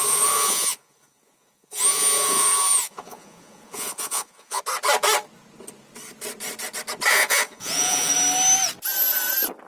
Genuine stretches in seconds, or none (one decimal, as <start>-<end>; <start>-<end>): 4.6-7.1; 8.1-9.7